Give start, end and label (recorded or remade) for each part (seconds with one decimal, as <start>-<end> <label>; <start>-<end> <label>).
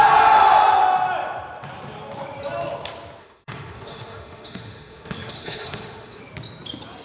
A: 0.0-3.2 recorded; 3.2-6.2 remade; 6.2-7.0 recorded